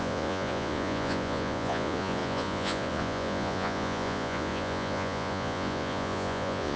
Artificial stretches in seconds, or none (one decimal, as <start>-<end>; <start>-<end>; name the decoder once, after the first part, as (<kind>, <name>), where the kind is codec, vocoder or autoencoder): 0.0-6.8 (vocoder, Vocos)